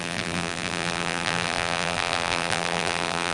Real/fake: fake